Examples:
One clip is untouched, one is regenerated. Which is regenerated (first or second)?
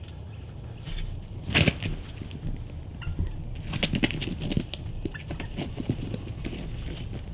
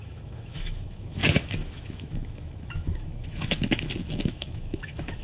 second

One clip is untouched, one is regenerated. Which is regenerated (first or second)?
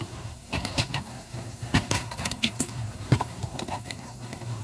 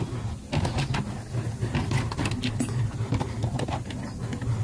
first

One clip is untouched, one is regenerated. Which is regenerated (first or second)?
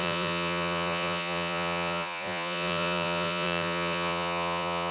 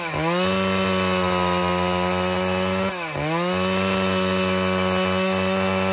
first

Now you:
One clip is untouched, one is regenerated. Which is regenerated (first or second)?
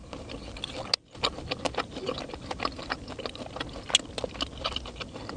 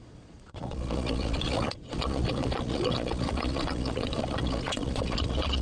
second